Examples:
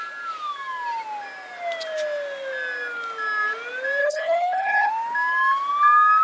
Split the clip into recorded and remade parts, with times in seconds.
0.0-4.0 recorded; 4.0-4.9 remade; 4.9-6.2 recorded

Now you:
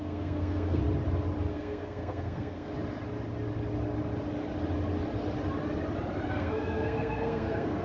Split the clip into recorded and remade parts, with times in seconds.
0.0-0.8 remade; 0.8-1.5 recorded; 1.5-2.7 remade; 2.7-6.3 recorded; 6.3-7.8 remade

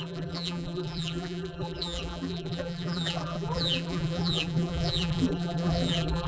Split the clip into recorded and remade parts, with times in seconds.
0.0-6.3 remade

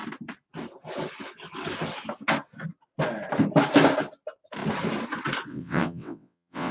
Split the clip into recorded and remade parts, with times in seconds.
0.0-5.5 recorded; 5.5-6.7 remade